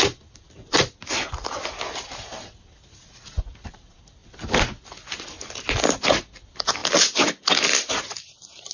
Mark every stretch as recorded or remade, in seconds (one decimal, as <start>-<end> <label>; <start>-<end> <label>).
0.0-8.7 recorded